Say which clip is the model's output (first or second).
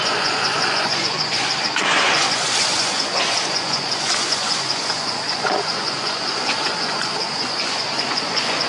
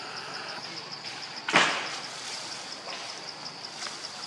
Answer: first